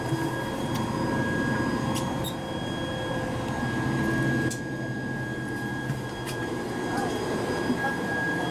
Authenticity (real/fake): real